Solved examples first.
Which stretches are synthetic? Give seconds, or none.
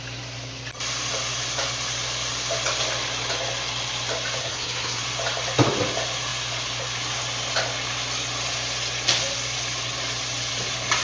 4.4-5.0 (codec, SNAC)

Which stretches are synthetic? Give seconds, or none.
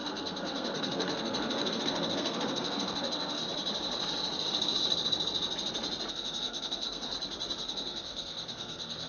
0.0-3.4 (codec, SNAC); 6.1-7.1; 7.7-9.1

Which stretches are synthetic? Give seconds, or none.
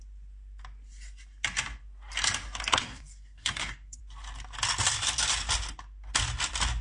2.7-4.0 (codec, SNAC)